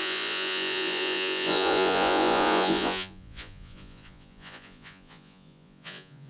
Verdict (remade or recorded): remade